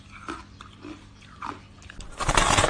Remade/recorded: recorded